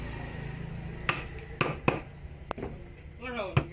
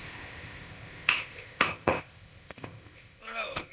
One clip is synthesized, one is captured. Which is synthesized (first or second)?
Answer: second